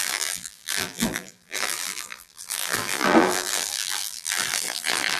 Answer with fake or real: fake